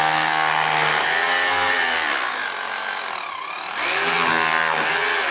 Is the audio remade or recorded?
recorded